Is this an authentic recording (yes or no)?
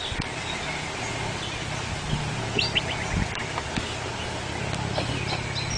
yes